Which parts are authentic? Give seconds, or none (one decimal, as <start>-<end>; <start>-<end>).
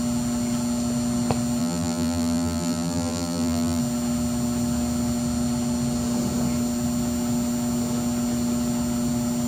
0.0-1.6; 3.8-9.5